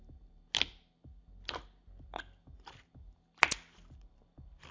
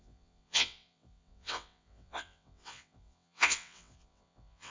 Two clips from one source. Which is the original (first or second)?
first